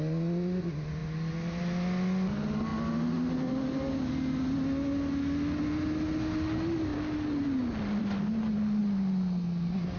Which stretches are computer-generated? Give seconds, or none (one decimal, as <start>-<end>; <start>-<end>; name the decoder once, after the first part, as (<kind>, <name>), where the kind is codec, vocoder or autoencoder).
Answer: none

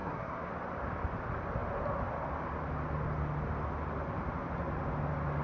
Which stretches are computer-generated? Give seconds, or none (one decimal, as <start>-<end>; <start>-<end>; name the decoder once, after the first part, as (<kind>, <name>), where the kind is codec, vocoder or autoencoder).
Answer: 0.0-0.5 (codec, SNAC)